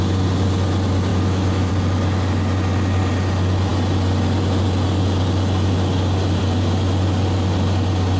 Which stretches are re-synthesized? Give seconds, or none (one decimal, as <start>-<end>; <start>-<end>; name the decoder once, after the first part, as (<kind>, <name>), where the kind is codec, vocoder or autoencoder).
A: 1.1-1.7 (autoencoder, DAC-VAE)

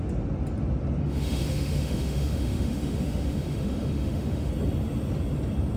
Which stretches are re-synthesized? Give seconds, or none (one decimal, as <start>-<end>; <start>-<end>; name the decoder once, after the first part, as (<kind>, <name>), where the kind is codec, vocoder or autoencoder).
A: 1.0-4.5 (autoencoder, DAC-VAE)

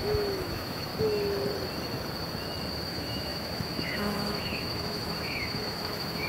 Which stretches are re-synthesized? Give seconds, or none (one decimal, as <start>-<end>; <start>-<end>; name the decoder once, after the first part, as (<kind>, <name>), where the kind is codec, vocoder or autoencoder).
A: 0.0-0.9 (autoencoder, DAC-VAE); 2.7-6.3

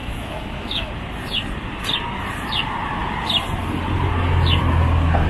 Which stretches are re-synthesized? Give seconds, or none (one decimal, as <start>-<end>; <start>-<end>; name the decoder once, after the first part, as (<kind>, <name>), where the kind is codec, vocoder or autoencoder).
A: 0.0-0.9 (autoencoder, DAC-VAE)